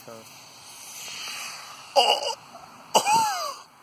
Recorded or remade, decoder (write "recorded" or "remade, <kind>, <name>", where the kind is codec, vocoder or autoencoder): recorded